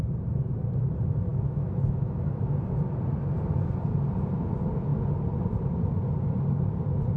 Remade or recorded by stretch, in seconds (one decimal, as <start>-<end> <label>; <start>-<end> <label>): 0.0-1.3 recorded; 1.3-2.2 remade; 2.2-7.2 recorded